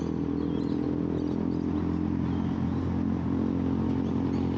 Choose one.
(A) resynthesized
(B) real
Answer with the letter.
B